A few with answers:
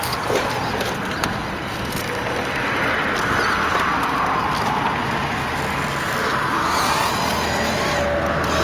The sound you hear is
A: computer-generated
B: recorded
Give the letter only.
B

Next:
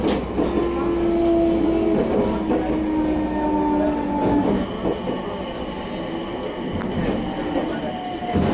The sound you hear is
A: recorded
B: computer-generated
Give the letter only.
A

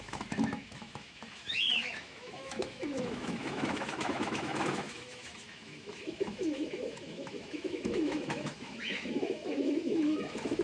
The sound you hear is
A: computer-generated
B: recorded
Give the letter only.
A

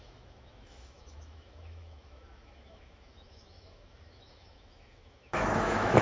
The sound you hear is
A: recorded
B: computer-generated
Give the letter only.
B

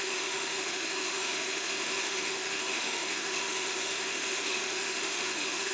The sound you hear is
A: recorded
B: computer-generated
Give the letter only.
B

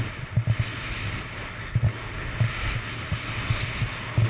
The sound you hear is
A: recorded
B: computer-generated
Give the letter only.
A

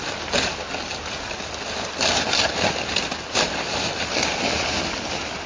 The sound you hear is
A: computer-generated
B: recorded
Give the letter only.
B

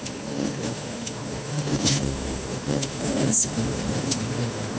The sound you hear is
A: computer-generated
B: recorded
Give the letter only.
A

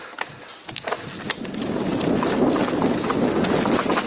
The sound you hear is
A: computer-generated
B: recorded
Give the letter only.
B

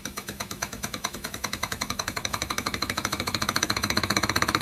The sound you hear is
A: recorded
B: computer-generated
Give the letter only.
B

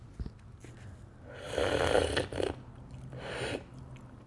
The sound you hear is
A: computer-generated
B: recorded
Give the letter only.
B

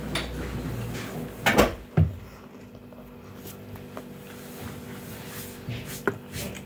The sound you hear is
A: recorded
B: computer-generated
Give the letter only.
A